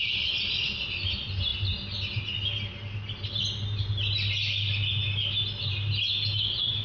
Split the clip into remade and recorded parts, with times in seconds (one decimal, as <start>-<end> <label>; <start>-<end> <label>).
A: 0.0-6.8 recorded